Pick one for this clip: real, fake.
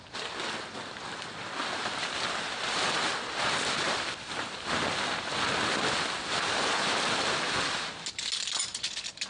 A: real